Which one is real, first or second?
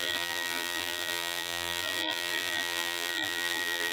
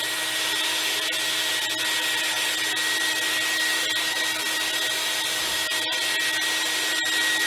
second